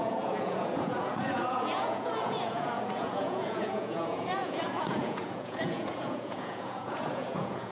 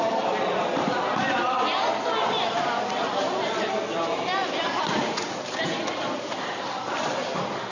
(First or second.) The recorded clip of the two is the second